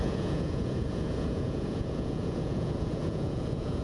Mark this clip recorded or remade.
remade